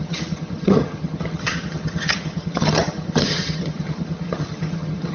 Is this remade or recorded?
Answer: remade